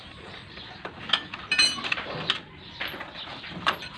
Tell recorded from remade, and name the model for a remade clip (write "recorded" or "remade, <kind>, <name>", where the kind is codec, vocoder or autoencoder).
recorded